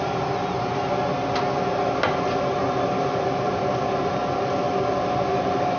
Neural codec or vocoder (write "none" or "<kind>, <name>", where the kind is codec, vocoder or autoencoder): none